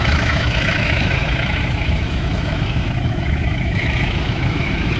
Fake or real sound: fake